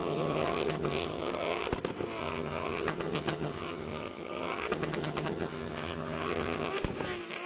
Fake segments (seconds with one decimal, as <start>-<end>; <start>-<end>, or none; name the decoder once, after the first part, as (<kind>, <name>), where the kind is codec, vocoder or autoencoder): 0.0-1.7 (vocoder, HiFi-GAN); 2.2-6.7